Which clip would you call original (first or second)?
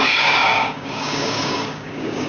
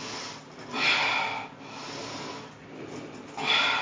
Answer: second